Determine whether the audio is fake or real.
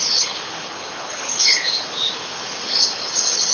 fake